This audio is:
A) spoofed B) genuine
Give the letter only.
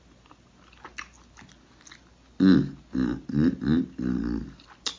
B